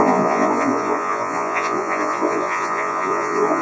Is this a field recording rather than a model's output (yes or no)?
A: no